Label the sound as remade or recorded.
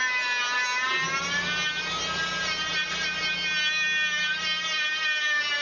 recorded